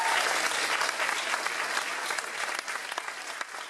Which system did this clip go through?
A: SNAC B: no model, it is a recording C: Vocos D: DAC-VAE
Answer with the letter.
B